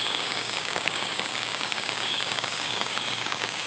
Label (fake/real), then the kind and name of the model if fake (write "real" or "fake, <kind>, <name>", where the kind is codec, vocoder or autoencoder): fake, codec, DAC